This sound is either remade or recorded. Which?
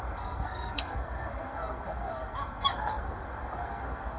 remade